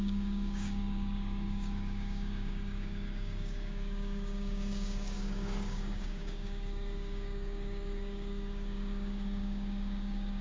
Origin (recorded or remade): remade